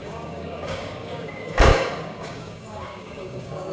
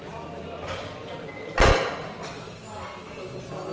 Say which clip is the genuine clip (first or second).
second